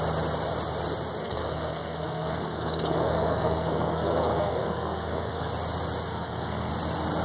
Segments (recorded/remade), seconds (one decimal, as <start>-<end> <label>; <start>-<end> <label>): 0.0-1.2 recorded; 1.2-5.5 remade; 5.5-6.1 recorded; 6.1-6.7 remade; 6.7-7.2 recorded